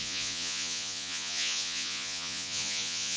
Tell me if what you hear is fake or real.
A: fake